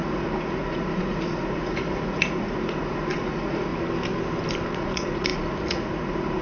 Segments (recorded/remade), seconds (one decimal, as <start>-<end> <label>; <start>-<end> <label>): 0.0-3.7 remade; 3.7-4.7 recorded; 4.7-6.4 remade